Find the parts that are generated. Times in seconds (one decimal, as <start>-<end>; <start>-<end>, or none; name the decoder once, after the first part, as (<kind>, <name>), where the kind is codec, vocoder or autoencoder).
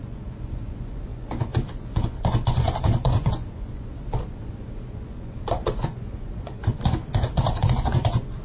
0.0-8.4 (vocoder, Vocos)